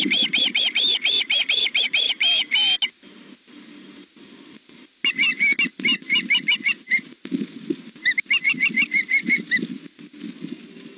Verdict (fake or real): real